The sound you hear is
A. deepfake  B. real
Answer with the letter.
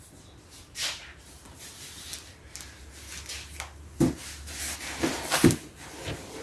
B